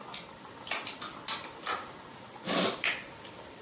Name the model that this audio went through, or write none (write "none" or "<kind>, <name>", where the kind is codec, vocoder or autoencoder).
none